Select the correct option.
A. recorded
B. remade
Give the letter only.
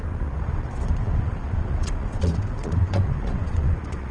B